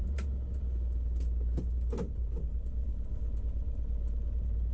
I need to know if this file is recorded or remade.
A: recorded